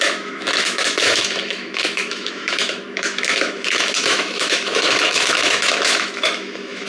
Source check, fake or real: fake